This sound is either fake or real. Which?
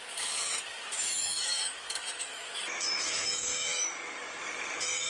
fake